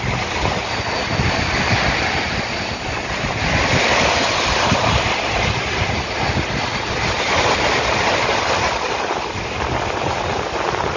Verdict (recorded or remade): recorded